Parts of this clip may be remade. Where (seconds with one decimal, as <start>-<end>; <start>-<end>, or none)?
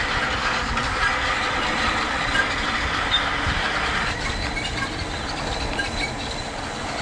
0.4-1.0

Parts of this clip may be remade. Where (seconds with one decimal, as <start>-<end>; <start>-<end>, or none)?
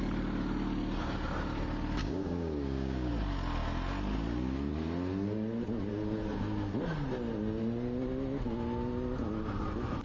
2.0-3.1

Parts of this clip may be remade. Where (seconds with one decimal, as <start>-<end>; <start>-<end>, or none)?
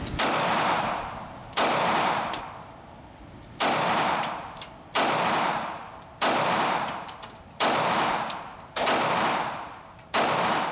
none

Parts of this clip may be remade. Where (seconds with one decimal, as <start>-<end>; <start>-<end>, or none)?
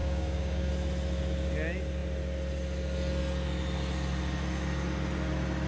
0.0-0.7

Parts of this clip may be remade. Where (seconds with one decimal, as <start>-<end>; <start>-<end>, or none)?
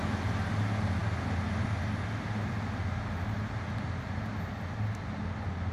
none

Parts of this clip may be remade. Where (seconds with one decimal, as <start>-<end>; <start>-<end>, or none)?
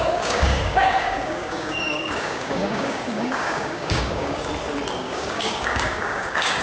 0.0-4.5; 5.0-6.6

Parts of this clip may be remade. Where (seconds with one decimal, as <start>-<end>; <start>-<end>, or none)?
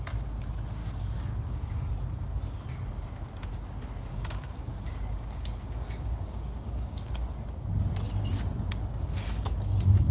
0.8-1.9; 4.1-7.1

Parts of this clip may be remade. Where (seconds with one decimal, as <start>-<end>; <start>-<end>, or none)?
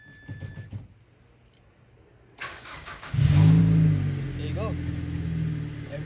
2.4-3.6